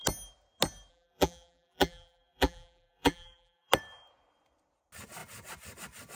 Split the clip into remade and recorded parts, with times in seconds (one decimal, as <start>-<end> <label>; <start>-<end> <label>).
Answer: 0.0-0.9 recorded; 0.9-3.7 remade; 3.7-6.2 recorded